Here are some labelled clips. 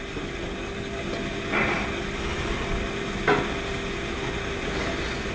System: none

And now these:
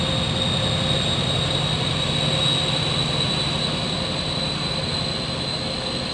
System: none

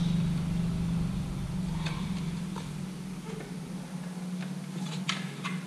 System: none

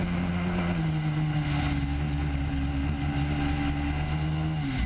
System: none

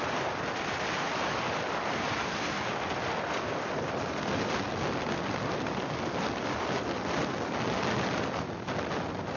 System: none